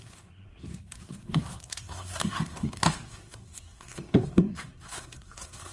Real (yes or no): no